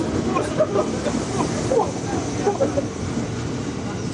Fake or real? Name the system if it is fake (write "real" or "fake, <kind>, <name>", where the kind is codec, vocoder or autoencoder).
real